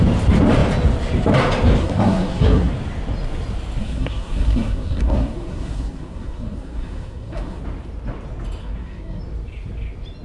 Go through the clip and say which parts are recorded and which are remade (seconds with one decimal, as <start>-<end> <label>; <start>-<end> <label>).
0.0-1.8 recorded; 1.8-2.7 remade; 2.7-3.8 recorded; 3.8-7.6 remade; 7.6-8.6 recorded; 8.6-9.2 remade; 9.2-10.2 recorded